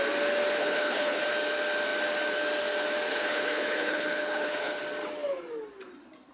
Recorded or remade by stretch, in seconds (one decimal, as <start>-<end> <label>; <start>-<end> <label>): 0.0-0.6 recorded; 0.6-1.2 remade; 1.2-3.1 recorded; 3.1-4.8 remade; 4.8-6.3 recorded